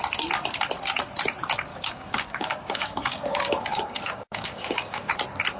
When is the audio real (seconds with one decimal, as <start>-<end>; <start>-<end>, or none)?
0.0-1.7; 5.1-5.6